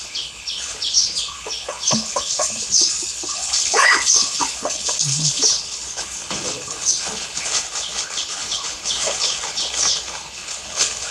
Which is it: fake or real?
fake